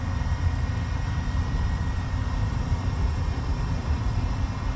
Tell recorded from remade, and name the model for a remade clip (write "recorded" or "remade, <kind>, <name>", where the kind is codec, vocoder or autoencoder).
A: remade, vocoder, BigVGAN v2